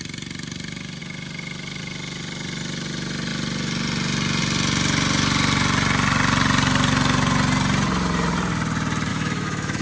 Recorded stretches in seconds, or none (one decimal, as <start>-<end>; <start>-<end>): 0.0-9.1